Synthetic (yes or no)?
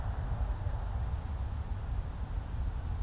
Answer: no